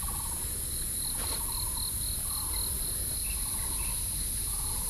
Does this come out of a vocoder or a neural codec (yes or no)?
no